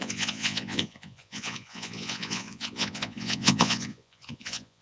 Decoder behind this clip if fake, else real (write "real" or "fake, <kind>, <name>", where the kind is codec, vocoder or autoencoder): fake, vocoder, Vocos